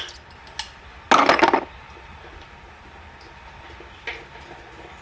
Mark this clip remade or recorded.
recorded